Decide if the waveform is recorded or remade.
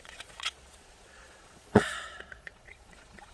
remade